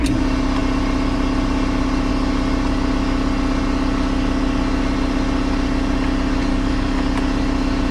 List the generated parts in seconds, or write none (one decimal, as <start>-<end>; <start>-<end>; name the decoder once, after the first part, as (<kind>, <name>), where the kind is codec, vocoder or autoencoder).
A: 6.5-7.0 (codec, DAC)